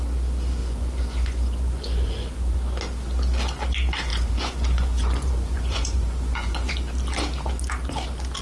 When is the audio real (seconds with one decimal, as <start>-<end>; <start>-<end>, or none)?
0.0-0.6; 2.6-4.1; 6.7-8.4